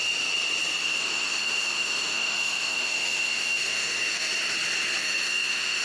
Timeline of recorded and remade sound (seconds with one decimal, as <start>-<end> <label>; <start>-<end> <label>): 0.0-0.8 recorded; 0.8-4.3 remade; 4.3-5.0 recorded; 5.0-5.8 remade